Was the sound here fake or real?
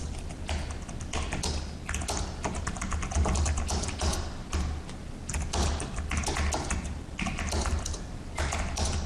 real